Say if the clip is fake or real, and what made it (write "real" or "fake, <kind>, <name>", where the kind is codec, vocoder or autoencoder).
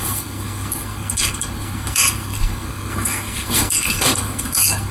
fake, codec, SNAC